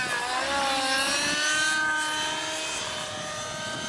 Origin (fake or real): real